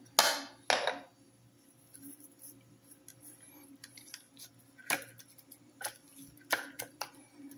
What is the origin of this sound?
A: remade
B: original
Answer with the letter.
B